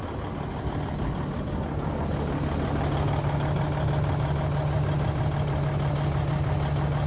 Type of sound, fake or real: real